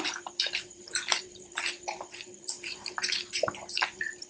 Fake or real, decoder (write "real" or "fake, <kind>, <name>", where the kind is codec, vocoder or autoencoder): fake, vocoder, BigVGAN v2